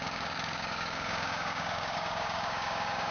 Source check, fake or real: fake